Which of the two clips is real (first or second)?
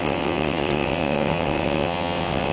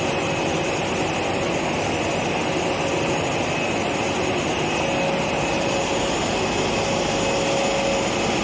second